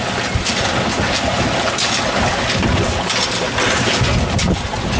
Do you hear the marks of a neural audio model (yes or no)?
no